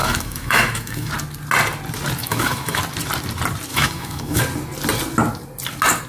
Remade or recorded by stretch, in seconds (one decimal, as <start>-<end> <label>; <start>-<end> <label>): 0.0-1.1 remade; 1.1-2.2 recorded; 2.2-2.8 remade; 2.8-3.7 recorded; 3.7-4.4 remade; 4.4-6.1 recorded